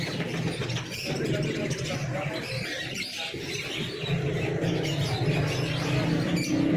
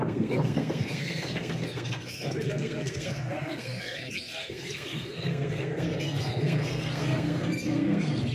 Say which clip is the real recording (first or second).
first